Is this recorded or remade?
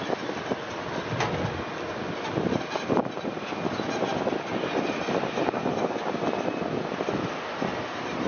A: recorded